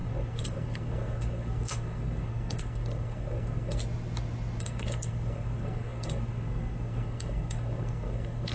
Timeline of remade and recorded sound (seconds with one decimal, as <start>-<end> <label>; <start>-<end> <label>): 0.0-3.8 remade; 3.8-4.6 recorded; 4.6-8.5 remade